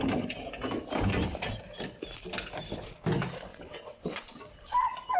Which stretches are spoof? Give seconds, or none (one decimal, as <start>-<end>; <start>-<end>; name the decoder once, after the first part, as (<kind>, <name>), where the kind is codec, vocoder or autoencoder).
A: 3.5-4.2 (vocoder, WaveNeXt)